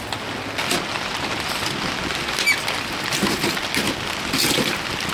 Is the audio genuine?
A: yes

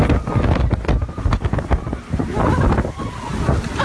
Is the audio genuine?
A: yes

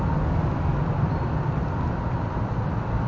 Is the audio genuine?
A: yes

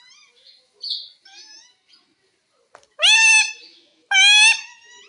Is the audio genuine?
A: yes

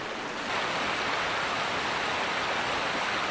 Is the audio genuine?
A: yes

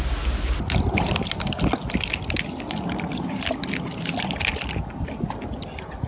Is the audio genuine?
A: yes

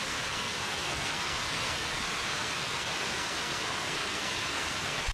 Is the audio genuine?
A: no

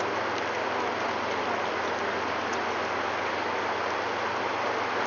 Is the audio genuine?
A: yes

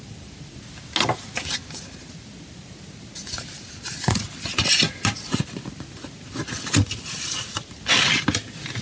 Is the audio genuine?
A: yes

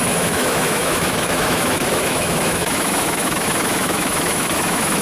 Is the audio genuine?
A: no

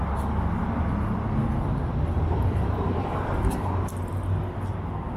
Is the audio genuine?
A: yes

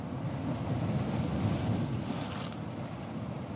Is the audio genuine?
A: yes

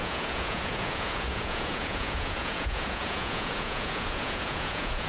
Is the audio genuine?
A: no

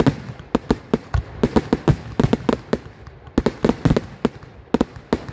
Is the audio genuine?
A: yes